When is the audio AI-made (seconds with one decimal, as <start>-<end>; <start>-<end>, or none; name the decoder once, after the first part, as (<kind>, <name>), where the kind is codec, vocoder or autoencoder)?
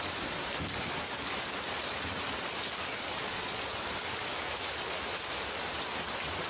2.9-3.8 (vocoder, Vocos)